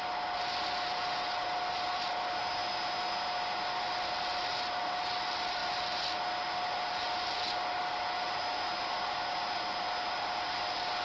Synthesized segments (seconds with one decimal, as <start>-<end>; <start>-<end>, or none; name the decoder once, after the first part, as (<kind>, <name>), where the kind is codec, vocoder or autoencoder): none